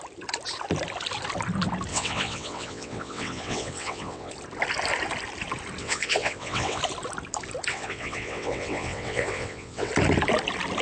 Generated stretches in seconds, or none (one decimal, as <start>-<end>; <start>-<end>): 1.9-4.3; 5.8-6.8; 7.7-9.9

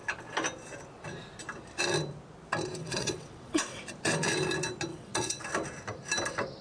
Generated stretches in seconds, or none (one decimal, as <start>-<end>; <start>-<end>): 2.8-3.8; 4.9-5.4

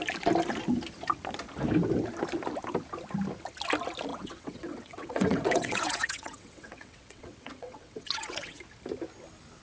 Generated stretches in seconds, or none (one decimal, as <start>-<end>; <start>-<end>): 4.1-8.6

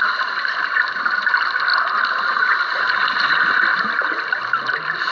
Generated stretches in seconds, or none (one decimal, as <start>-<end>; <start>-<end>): none

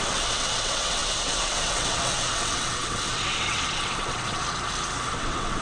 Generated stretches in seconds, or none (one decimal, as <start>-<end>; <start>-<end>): 0.0-4.4; 5.1-5.6

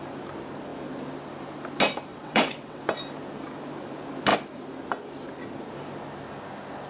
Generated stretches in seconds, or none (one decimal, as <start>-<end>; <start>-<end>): 2.1-2.8

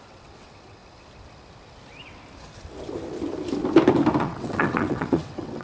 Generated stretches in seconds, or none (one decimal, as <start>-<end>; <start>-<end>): 0.0-0.8; 4.2-5.6

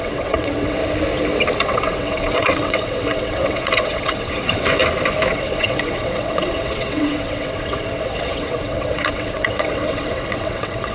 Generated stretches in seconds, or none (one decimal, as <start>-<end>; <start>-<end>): 0.0-0.8; 1.6-4.8; 5.3-10.9